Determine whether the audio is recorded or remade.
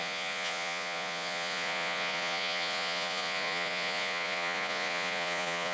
remade